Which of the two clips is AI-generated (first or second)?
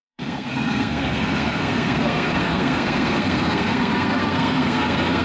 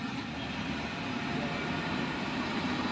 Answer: first